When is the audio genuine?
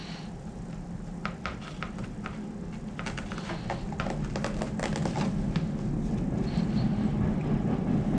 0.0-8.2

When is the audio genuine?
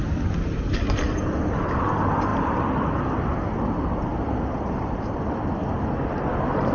0.0-6.7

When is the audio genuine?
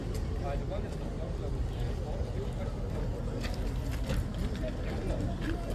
0.0-5.7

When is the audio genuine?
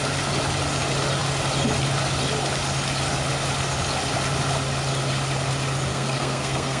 0.0-5.9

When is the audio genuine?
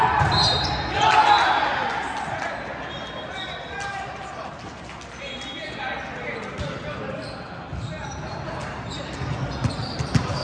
0.0-10.4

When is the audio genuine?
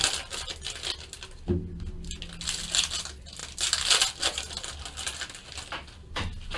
0.0-6.6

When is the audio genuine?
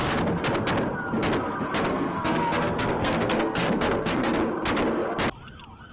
0.0-1.9; 4.4-5.9